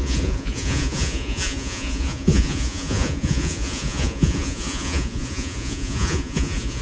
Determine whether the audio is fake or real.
fake